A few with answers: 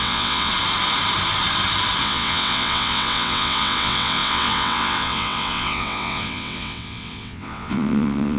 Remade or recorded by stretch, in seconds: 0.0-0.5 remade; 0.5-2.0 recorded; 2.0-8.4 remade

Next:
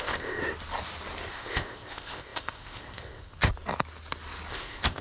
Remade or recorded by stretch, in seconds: 0.0-0.4 remade; 0.4-1.3 recorded; 1.3-3.5 remade; 3.5-4.5 recorded; 4.5-5.0 remade

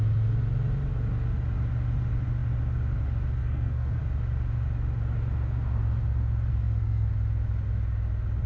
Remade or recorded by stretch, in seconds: 0.0-3.4 recorded; 3.4-4.0 remade; 4.0-6.5 recorded; 6.5-7.1 remade; 7.1-8.5 recorded